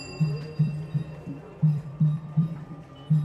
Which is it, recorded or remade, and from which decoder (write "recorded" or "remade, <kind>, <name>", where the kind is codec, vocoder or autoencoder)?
remade, vocoder, BigVGAN v2